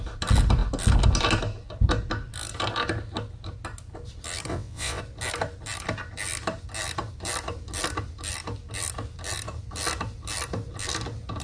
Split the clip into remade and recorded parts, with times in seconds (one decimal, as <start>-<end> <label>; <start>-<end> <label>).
0.0-4.5 recorded; 4.5-5.0 remade; 5.0-11.4 recorded